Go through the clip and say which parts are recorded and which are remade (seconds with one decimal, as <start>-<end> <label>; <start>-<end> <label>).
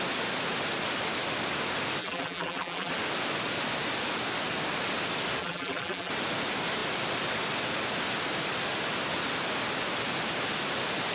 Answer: 0.0-2.0 recorded; 2.0-2.9 remade; 2.9-5.4 recorded; 5.4-6.1 remade; 6.1-11.1 recorded